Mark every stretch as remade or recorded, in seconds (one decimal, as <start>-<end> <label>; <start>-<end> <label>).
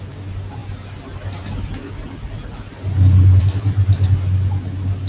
0.0-5.1 recorded